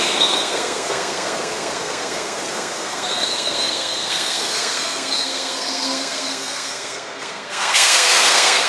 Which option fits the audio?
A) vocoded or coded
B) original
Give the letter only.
A